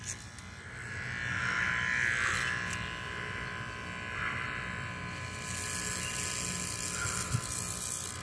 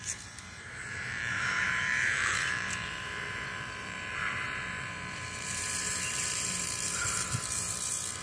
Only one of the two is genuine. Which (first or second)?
first